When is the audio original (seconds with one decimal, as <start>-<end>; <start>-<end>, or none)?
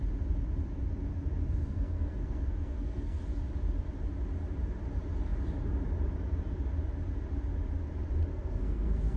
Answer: 0.0-1.6; 3.2-8.3